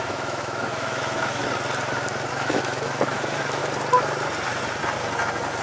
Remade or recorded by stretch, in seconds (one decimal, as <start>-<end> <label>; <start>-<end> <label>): 0.0-1.4 remade; 1.4-2.3 recorded; 2.3-3.6 remade; 3.6-5.6 recorded